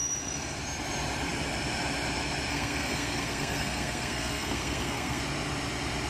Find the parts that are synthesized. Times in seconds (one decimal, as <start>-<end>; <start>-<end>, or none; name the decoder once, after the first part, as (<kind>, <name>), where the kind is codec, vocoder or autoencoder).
2.5-5.2 (codec, SNAC)